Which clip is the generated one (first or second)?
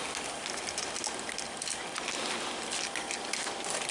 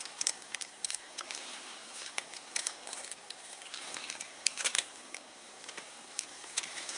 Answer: second